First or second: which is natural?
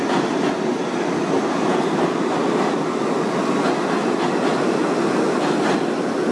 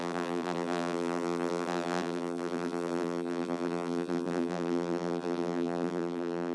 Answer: first